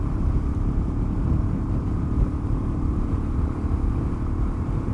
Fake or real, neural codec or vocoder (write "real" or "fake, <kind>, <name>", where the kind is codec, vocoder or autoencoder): fake, vocoder, BigVGAN v2